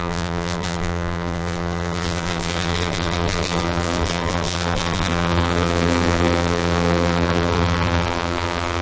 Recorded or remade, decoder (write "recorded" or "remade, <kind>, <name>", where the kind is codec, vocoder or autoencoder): remade, vocoder, BigVGAN v2